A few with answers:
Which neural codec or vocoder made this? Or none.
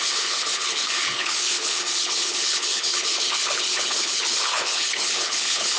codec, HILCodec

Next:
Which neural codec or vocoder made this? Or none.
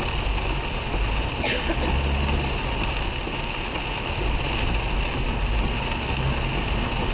none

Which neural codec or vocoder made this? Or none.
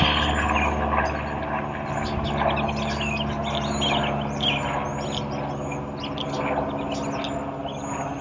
none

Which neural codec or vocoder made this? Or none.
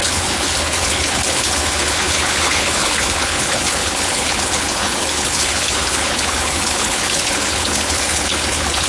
codec, HILCodec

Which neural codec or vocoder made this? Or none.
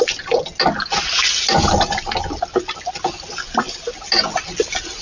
none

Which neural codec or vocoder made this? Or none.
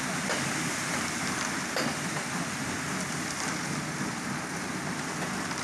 none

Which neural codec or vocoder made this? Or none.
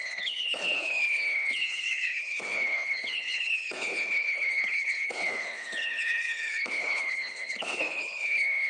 codec, HILCodec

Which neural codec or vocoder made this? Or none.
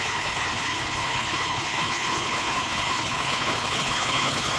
codec, HILCodec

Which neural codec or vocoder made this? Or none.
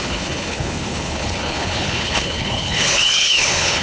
codec, HILCodec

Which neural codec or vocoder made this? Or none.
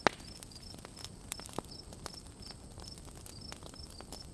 none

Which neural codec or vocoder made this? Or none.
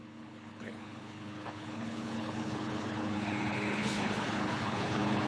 codec, HILCodec